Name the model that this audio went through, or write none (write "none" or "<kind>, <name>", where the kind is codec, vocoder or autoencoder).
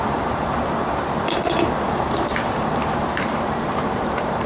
vocoder, BigVGAN v2